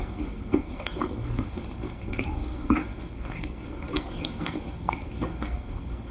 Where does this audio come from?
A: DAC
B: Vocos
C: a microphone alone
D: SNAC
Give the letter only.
D